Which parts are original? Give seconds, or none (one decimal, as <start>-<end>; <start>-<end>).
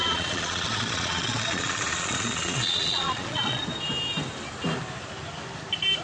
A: 3.6-6.0